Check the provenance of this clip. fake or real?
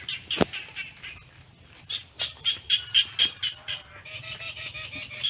real